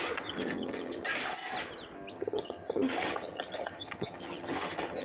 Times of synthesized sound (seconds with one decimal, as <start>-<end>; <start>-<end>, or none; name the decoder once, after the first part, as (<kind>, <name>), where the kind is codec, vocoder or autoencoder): 0.0-1.1 (vocoder, HiFi-GAN); 2.1-5.0

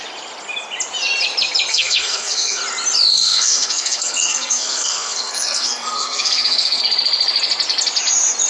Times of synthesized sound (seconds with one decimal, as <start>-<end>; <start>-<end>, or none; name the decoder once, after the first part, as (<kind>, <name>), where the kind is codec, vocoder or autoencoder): 1.7-2.6 (codec, SNAC); 3.1-6.8

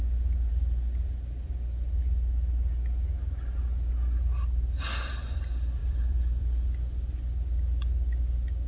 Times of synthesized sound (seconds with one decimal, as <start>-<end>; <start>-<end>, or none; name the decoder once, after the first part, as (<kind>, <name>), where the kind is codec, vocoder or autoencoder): 5.8-6.5 (vocoder, BigVGAN v2)

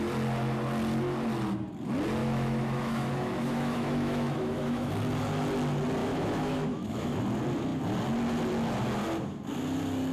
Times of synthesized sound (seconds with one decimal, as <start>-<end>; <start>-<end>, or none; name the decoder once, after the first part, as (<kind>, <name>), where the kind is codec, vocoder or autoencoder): 2.2-4.9 (autoencoder, DAC-VAE); 6.0-7.2